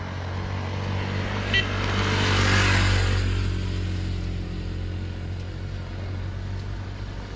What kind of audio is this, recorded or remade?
recorded